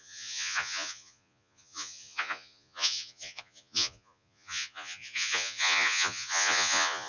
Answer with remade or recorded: remade